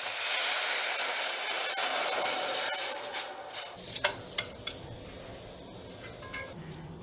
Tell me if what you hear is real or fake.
real